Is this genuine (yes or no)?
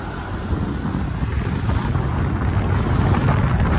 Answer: yes